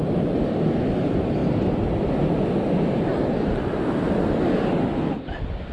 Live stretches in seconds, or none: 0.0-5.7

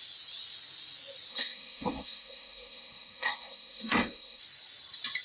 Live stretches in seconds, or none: 0.0-1.3; 4.4-5.2

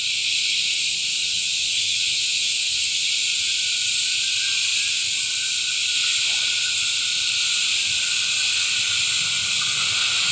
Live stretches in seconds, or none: 0.0-1.2; 3.1-10.3

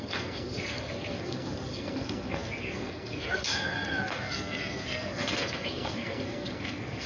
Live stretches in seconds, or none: none

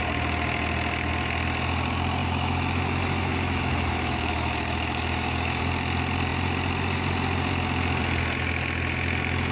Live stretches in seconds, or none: 0.0-2.2; 5.6-9.5

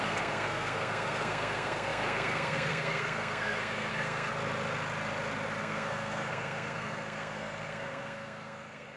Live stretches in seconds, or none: 4.3-5.6